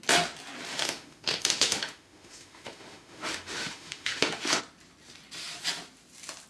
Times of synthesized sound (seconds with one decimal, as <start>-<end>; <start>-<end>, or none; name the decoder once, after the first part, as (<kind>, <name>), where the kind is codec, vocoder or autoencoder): 0.7-4.6 (autoencoder, DAC-VAE)